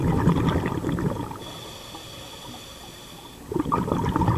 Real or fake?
real